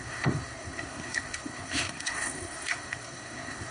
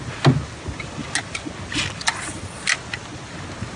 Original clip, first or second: second